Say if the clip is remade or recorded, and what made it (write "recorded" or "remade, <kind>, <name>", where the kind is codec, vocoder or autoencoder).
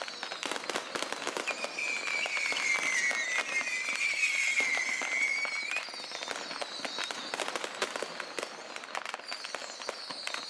recorded